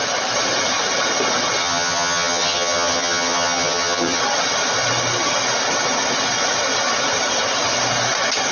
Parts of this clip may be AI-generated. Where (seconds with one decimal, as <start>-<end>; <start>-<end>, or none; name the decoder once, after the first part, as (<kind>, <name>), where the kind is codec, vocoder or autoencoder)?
1.6-4.2 (vocoder, HiFi-GAN)